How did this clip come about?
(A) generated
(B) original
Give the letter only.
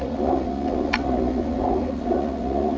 A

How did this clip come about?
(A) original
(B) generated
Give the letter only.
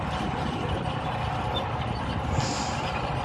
A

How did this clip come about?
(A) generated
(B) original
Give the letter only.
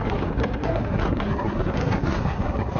A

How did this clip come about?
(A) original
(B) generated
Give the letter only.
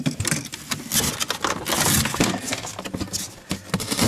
A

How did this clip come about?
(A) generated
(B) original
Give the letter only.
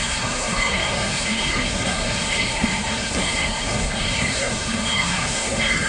A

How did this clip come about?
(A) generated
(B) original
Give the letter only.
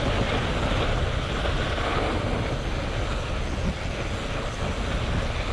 B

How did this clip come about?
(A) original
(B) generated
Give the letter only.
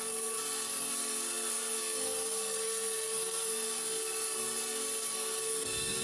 B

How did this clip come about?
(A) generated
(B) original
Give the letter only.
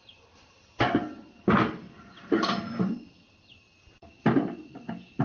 A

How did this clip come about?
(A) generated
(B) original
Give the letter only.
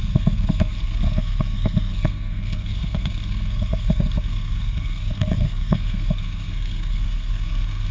A